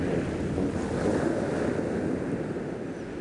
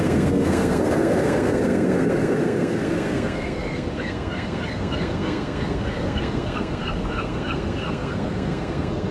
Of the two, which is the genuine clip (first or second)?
first